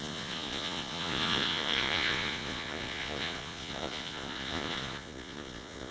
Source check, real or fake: fake